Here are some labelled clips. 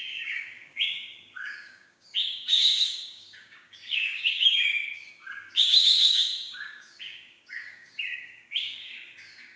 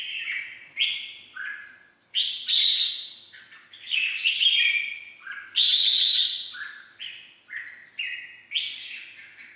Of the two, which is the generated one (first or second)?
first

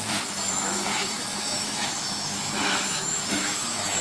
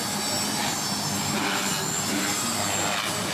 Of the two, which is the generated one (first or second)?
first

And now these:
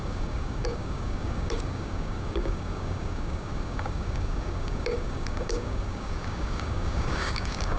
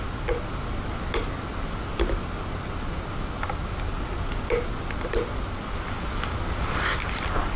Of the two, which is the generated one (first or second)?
first